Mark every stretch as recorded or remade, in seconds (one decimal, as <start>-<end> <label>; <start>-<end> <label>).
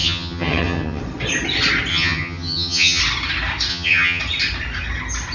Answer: 0.0-1.0 remade; 1.0-1.9 recorded; 1.9-3.0 remade; 3.0-3.7 recorded; 3.7-4.2 remade; 4.2-5.3 recorded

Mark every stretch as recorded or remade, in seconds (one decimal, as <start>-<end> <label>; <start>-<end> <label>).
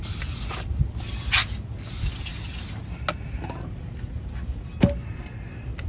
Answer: 0.0-5.9 recorded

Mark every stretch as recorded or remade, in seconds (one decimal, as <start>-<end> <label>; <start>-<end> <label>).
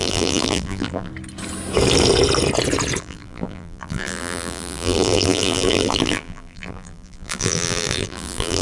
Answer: 0.0-1.1 remade; 1.1-3.0 recorded; 3.0-8.6 remade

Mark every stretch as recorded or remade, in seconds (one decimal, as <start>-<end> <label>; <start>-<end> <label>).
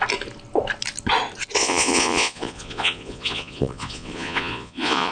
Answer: 0.0-1.6 recorded; 1.6-5.1 remade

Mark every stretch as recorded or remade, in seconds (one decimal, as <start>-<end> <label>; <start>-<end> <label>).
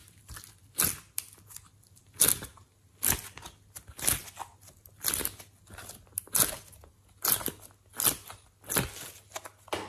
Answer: 0.0-9.9 recorded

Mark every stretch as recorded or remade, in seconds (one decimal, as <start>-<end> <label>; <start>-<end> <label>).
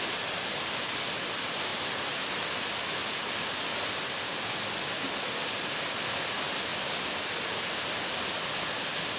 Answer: 0.0-1.7 recorded; 1.7-2.3 remade; 2.3-6.7 recorded; 6.7-8.2 remade; 8.2-9.2 recorded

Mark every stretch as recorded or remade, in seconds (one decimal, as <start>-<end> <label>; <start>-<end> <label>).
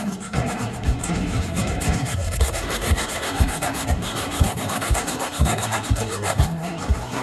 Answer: 0.0-7.2 remade